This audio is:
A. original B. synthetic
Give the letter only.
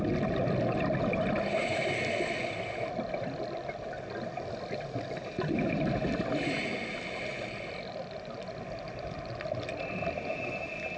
A